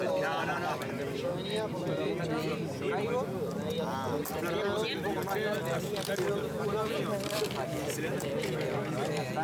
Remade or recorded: recorded